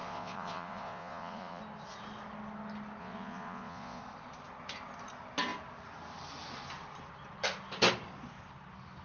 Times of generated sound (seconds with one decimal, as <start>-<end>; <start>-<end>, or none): 0.0-1.6; 3.0-4.0